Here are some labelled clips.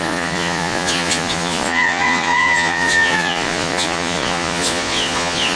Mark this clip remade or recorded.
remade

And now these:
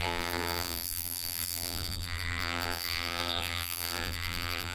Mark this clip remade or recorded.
remade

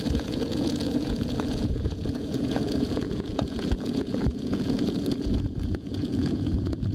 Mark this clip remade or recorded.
remade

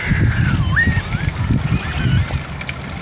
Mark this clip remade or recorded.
recorded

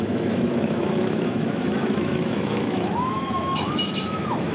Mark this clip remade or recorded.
remade